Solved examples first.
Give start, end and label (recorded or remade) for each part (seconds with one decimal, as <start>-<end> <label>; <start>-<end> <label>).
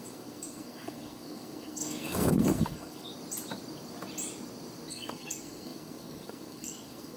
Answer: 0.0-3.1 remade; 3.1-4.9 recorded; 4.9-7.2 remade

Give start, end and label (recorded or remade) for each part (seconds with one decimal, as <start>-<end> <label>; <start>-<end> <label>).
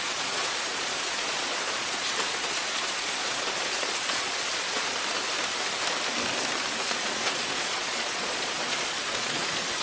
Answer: 0.0-4.9 remade; 4.9-6.9 recorded; 6.9-9.8 remade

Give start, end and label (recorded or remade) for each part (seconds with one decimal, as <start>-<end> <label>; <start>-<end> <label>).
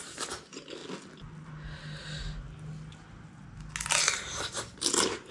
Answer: 0.0-0.8 remade; 0.8-4.0 recorded; 4.0-5.3 remade